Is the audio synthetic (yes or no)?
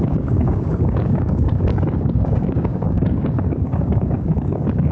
yes